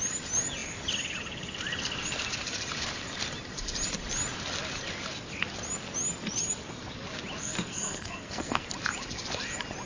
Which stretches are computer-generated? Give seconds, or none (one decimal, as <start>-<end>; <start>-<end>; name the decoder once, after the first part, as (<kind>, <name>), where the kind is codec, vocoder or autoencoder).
7.4-8.7 (codec, SNAC)

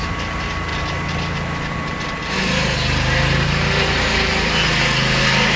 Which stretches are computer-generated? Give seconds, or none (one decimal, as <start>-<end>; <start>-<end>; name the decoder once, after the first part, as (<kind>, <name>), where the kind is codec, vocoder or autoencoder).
none

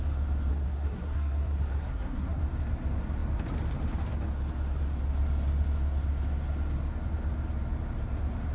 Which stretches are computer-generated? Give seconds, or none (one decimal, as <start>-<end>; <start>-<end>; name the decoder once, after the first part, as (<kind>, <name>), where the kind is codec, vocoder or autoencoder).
0.5-2.4 (codec, SNAC)